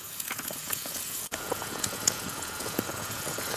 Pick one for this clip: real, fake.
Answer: fake